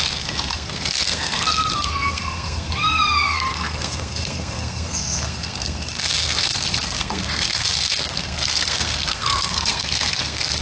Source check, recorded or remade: remade